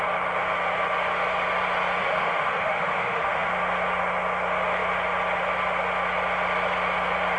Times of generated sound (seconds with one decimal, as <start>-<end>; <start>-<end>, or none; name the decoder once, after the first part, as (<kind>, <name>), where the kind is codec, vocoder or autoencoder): 2.0-3.5 (autoencoder, DAC-VAE)